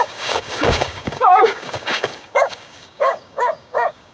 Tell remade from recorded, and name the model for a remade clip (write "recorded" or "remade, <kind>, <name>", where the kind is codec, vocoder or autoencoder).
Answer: remade, codec, DAC